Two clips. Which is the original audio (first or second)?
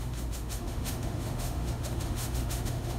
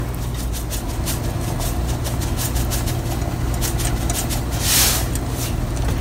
second